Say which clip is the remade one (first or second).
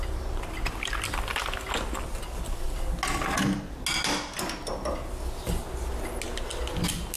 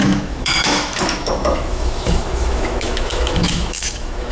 second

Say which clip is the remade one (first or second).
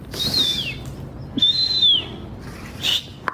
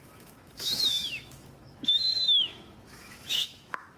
second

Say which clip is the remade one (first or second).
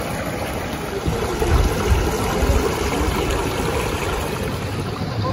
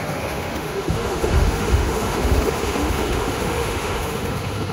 second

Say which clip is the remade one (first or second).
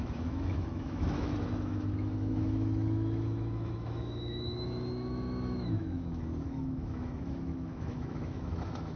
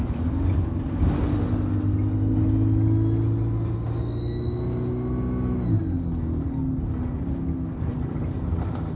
first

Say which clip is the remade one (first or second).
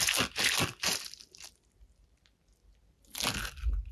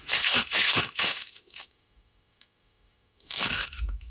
second